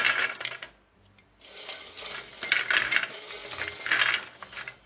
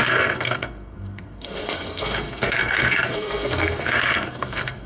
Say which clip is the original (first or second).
first